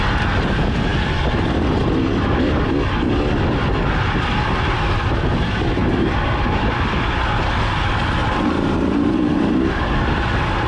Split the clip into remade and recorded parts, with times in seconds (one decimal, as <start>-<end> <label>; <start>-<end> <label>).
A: 0.0-10.7 recorded